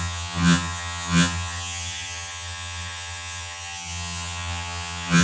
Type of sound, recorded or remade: remade